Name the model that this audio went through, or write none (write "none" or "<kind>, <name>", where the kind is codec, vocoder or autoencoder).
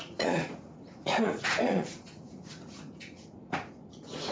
vocoder, Vocos